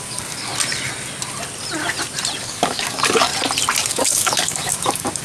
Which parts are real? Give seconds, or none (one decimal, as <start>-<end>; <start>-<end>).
0.5-2.4; 3.3-3.9